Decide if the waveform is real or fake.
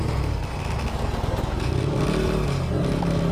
real